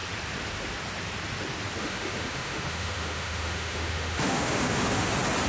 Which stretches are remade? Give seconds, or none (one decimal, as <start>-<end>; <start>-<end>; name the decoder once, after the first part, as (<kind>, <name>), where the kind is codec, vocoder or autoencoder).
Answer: 1.8-5.1 (autoencoder, DAC-VAE)